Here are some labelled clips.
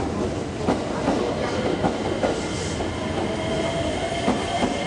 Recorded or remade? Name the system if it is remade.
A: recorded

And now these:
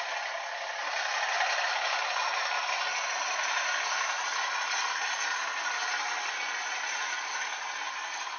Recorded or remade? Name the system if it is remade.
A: recorded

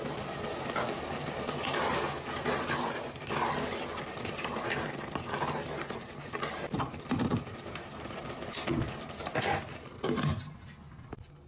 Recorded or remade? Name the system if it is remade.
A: recorded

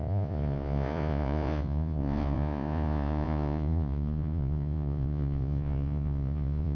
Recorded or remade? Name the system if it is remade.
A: remade, vocoder, Vocos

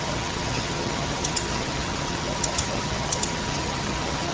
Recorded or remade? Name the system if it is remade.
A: remade, vocoder, HiFi-GAN